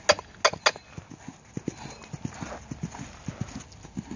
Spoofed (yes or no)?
no